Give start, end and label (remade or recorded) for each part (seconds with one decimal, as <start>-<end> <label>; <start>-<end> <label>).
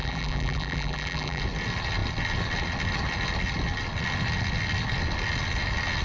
0.0-1.4 remade; 1.4-6.0 recorded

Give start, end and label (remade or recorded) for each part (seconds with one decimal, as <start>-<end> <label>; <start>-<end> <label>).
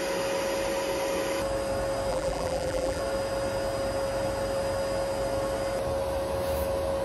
0.0-2.1 recorded; 2.1-3.0 remade; 3.0-7.0 recorded